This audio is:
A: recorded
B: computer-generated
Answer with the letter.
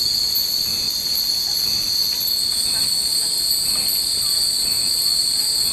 A